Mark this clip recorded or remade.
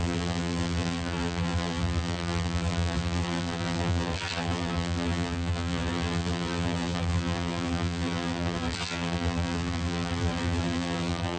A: remade